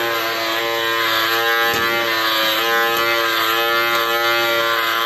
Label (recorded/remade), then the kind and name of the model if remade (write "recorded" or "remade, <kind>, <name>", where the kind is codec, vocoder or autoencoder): recorded